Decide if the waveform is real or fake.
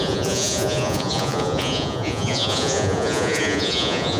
fake